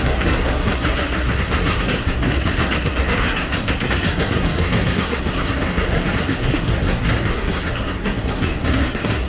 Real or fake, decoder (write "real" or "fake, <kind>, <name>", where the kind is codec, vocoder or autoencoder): fake, codec, SNAC